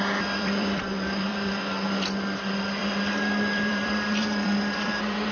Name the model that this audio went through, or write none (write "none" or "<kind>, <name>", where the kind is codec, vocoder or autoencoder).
vocoder, BigVGAN v2